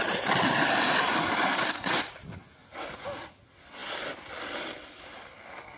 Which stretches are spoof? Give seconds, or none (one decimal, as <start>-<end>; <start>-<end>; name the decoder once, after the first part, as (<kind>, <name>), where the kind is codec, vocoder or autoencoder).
none